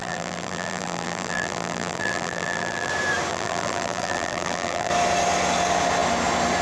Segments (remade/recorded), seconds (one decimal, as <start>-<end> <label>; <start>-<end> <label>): 0.0-2.9 remade; 2.9-3.3 recorded; 3.3-4.9 remade; 4.9-6.6 recorded